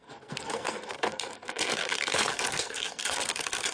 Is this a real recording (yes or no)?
no